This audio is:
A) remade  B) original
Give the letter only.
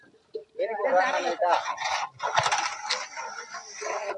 B